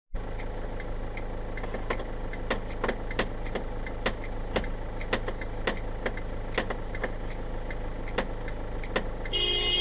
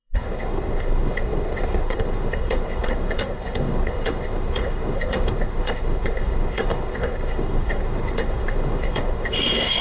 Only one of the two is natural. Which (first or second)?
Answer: first